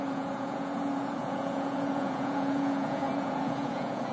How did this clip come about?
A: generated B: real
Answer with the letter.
A